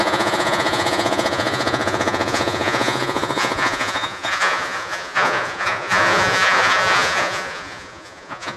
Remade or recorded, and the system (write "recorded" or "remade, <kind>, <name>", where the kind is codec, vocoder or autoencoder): remade, vocoder, Vocos